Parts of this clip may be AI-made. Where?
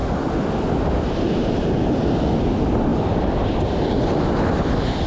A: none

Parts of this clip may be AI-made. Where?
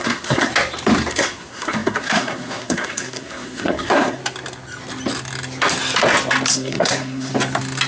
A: 0.0-0.5 (codec, SNAC); 1.1-4.2; 6.5-7.3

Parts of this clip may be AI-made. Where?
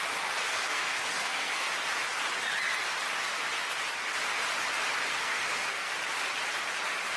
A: 0.4-1.7 (codec, SNAC); 5.1-5.9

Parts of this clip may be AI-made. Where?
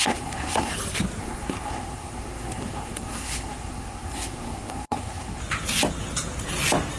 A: 0.0-0.7 (codec, SNAC); 1.2-5.4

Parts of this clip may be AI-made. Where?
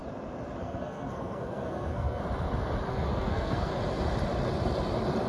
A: 0.6-2.2 (codec, SNAC); 2.9-3.7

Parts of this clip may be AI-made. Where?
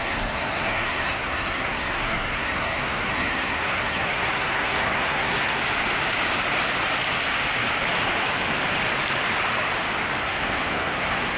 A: 0.0-5.6 (codec, SNAC); 10.2-11.4